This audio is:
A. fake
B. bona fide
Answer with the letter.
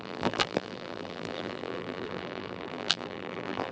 A